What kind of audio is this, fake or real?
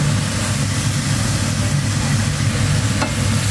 real